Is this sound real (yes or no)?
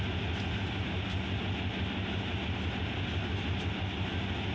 yes